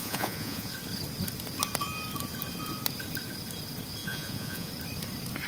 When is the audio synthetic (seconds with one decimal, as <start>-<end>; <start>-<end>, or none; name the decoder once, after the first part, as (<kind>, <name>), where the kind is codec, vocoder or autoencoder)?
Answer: 0.0-0.7 (vocoder, Vocos); 4.0-4.7